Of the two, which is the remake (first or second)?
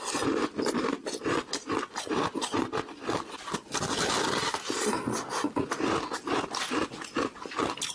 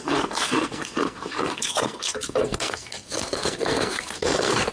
second